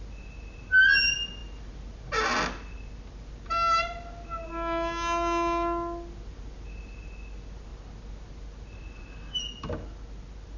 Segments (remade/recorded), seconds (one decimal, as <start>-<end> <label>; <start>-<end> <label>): 0.0-10.6 recorded